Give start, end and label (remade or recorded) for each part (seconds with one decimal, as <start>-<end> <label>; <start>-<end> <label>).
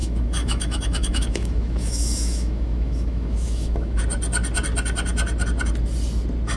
0.0-4.0 remade; 4.0-6.6 recorded